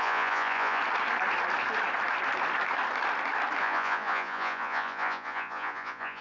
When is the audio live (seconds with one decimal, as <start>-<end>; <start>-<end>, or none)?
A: 0.8-3.6